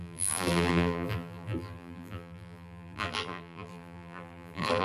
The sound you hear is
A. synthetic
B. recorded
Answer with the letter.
A